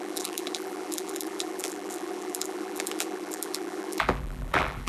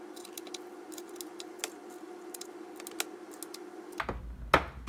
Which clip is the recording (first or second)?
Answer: second